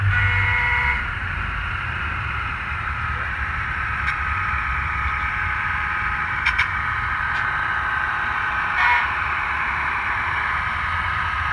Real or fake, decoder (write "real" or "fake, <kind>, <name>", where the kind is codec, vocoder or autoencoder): fake, vocoder, BigVGAN v2